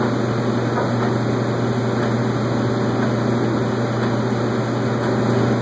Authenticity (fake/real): real